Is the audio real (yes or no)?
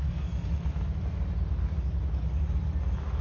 yes